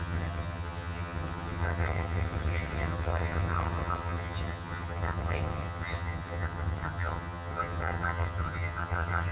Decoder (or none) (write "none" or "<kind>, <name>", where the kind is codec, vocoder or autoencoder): vocoder, HiFi-GAN